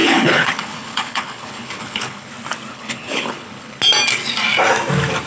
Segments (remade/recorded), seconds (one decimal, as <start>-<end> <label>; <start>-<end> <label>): 0.0-2.3 remade; 2.3-2.7 recorded; 2.7-3.8 remade; 3.8-5.3 recorded